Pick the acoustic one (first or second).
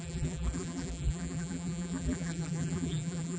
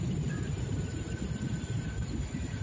second